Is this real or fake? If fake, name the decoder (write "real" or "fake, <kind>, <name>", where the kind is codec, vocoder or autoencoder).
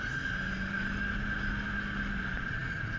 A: real